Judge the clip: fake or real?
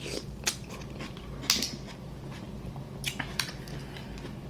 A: real